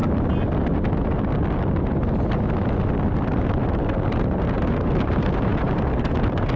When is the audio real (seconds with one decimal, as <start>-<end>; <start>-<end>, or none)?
0.0-3.0